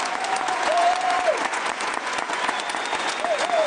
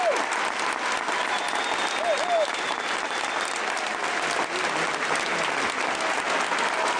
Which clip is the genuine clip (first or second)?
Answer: second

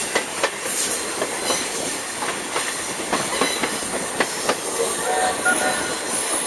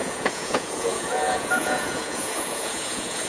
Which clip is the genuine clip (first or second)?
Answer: first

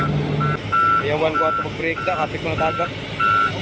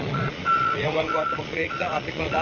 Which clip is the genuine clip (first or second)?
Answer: first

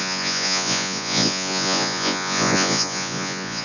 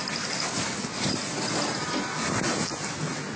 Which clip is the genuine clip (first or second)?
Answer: second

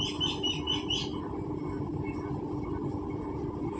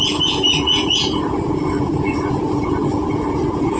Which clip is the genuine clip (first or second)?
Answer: first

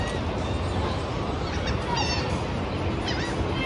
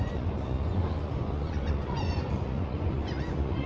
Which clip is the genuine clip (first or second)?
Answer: first